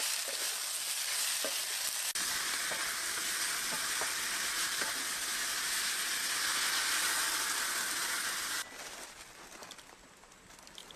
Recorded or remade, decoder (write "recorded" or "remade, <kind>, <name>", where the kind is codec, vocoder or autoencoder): recorded